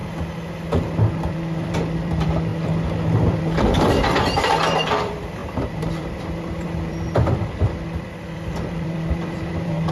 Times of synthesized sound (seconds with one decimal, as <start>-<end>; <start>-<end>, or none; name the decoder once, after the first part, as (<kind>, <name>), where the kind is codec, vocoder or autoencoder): 1.3-2.5 (vocoder, BigVGAN v2); 3.3-9.9